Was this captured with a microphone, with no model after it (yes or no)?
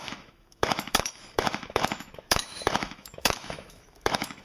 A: no